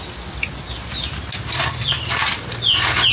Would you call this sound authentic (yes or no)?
yes